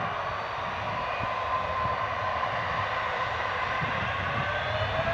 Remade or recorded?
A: remade